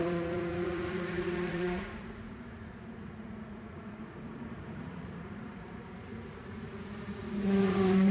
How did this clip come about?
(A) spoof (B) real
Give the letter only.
A